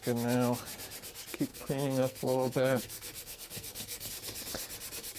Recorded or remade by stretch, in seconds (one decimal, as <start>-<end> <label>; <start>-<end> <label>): 0.0-1.5 recorded; 1.5-4.1 remade; 4.1-5.2 recorded